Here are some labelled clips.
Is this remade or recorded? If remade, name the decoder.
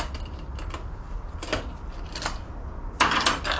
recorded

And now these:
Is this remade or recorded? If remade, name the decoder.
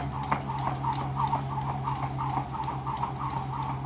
recorded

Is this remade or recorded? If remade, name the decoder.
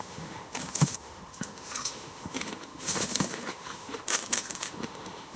remade, autoencoder, DAC-VAE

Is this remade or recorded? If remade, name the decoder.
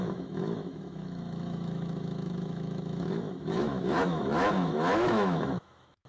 remade, autoencoder, DAC-VAE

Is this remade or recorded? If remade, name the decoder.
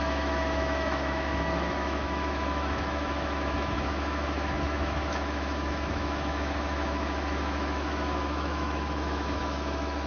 remade, autoencoder, DAC-VAE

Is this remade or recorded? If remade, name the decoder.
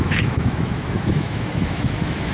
remade, autoencoder, DAC-VAE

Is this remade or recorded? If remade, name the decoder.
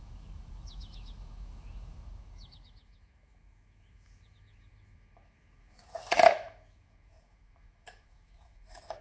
remade, autoencoder, DAC-VAE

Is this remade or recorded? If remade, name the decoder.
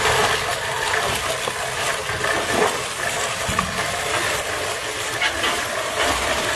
recorded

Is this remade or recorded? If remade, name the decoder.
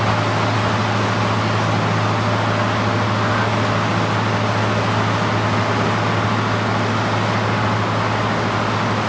recorded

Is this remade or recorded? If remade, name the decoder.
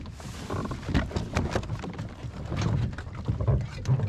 recorded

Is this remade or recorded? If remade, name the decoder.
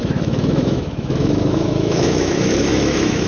remade, autoencoder, DAC-VAE